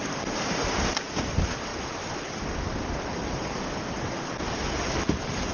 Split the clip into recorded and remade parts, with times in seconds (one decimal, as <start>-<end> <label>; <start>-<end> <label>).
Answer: 0.0-1.2 remade; 1.2-1.7 recorded; 1.7-3.9 remade; 3.9-5.5 recorded